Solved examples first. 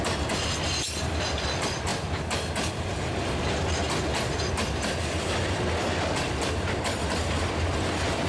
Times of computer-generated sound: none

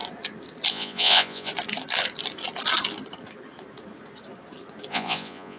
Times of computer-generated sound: 0.7-1.5 (vocoder, Vocos); 4.9-5.6

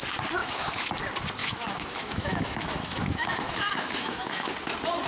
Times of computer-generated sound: 0.4-0.9 (autoencoder, DAC-VAE); 1.4-4.5

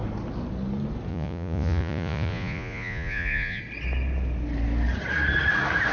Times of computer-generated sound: 1.1-3.6 (vocoder, Vocos)

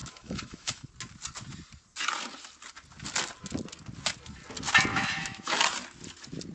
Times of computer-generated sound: 0.0-0.9 (autoencoder, DAC-VAE); 4.9-5.6